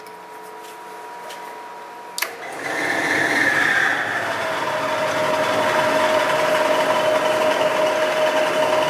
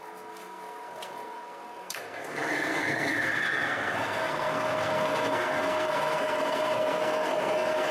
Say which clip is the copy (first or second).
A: second